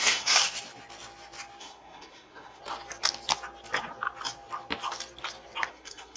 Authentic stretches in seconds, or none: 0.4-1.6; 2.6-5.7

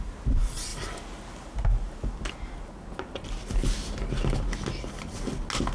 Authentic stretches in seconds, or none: 0.0-5.7

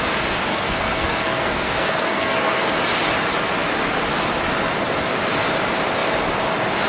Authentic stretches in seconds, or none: 0.0-0.5; 2.6-6.9

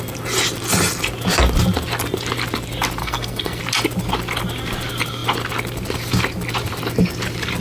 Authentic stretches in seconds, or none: 0.0-3.0; 3.6-7.6

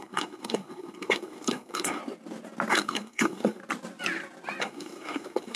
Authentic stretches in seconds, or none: 2.0-2.7; 3.6-4.6

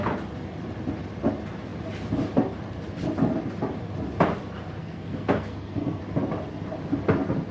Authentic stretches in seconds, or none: 0.0-4.8; 6.0-7.5

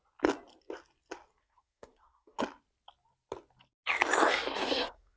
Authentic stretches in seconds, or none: 0.0-1.4; 2.4-4.3